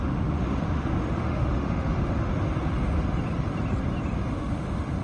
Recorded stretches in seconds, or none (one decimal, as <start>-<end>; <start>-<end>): 2.3-4.3